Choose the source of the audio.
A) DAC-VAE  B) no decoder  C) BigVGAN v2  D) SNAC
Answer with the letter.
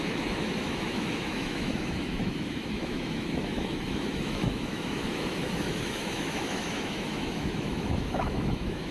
A